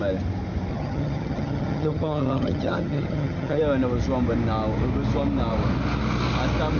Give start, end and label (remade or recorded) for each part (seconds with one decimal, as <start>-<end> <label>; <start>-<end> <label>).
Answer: 0.0-0.7 recorded; 0.7-3.6 remade; 3.6-6.8 recorded